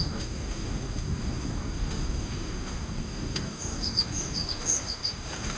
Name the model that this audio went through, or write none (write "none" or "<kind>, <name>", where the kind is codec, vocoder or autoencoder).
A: codec, DAC